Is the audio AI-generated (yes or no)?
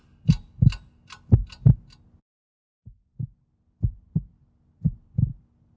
no